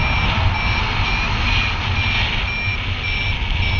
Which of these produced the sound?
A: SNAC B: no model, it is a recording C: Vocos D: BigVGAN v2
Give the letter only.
B